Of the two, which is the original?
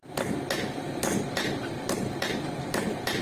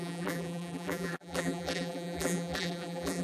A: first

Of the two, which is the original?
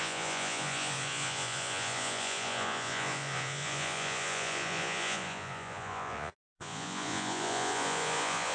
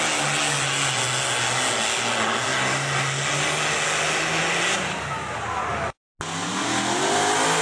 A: second